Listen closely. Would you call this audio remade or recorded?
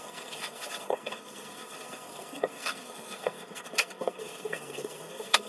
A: remade